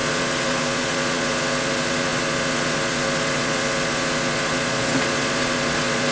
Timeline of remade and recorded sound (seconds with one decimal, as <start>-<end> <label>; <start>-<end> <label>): 0.0-6.1 remade